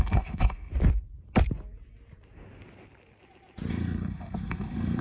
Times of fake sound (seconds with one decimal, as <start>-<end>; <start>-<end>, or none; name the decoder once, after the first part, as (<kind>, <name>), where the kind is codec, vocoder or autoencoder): 0.0-0.7 (codec, SNAC); 3.7-5.0